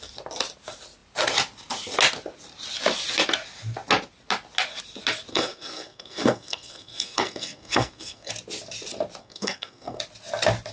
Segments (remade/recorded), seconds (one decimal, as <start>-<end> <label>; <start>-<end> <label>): 0.0-5.3 recorded; 5.3-8.3 remade; 8.3-9.2 recorded; 9.2-10.0 remade; 10.0-10.7 recorded